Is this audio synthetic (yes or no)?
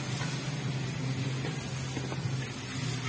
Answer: no